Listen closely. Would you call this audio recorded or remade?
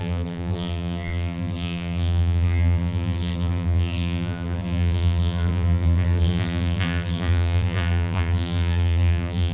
remade